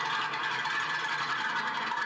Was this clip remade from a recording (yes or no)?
no